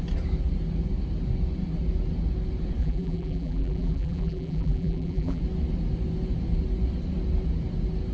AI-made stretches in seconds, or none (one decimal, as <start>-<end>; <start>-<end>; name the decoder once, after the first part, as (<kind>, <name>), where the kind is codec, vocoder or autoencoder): 2.8-5.4 (vocoder, BigVGAN v2)